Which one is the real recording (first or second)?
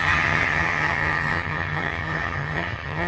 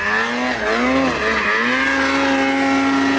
second